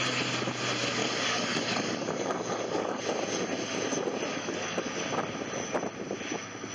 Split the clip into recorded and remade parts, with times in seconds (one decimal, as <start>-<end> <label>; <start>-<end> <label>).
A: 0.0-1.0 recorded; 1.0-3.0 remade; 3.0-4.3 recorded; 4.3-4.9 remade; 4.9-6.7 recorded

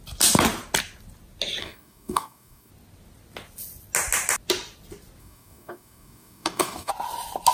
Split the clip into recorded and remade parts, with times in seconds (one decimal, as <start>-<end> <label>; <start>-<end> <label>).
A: 0.0-1.6 recorded; 1.6-2.7 remade; 2.7-5.2 recorded; 5.2-6.9 remade; 6.9-7.5 recorded

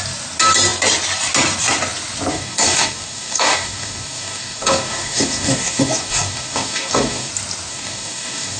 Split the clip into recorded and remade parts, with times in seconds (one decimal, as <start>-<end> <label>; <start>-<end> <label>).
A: 0.0-2.3 recorded; 2.3-7.3 remade; 7.3-7.7 recorded; 7.7-8.6 remade

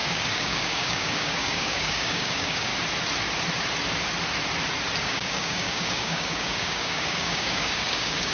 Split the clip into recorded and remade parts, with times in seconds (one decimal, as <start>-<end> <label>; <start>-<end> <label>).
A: 0.0-2.7 remade; 2.7-5.0 recorded; 5.0-8.3 remade